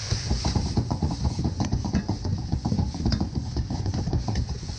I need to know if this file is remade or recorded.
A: remade